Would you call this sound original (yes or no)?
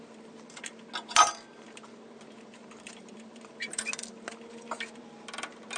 yes